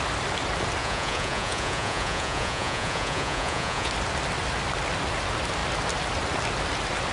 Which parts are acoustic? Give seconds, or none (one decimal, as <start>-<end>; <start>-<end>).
0.0-0.8; 3.9-7.1

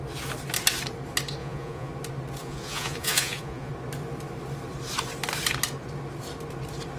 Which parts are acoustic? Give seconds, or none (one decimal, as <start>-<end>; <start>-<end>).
0.0-1.4; 1.9-2.4; 3.7-7.0

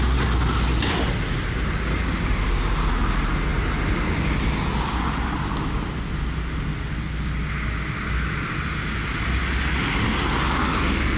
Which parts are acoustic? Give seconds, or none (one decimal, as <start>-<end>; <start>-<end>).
0.0-11.2

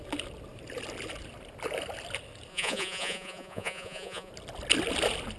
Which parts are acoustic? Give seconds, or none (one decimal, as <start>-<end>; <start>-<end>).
0.0-2.5; 4.3-5.4